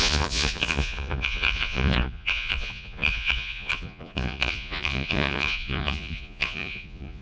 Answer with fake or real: fake